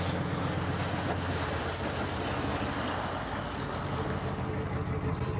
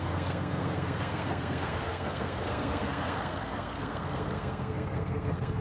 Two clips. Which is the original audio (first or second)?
first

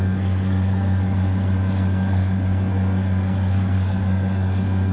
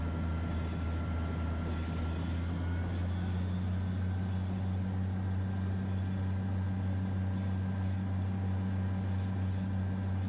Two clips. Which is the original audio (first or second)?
second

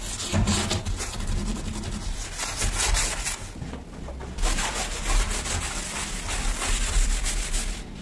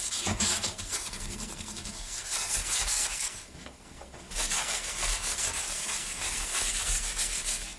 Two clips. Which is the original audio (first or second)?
first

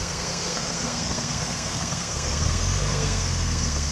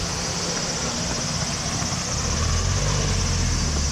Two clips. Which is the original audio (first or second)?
second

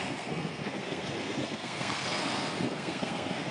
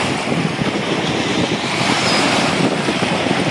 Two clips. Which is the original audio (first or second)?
second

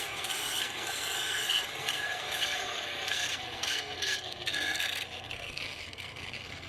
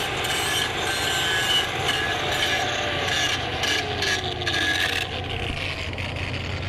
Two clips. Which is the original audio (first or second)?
second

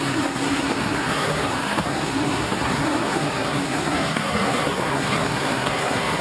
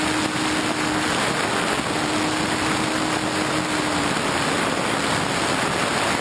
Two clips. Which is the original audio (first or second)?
second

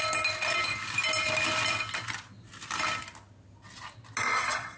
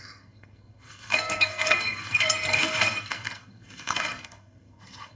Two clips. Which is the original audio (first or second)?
first